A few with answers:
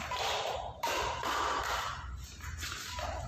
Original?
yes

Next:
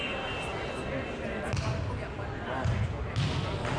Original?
yes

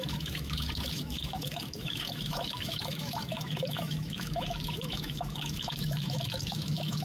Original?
no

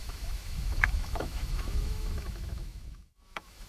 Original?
no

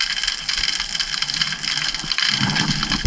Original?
yes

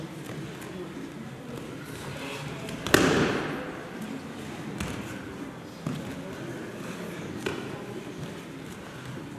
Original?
yes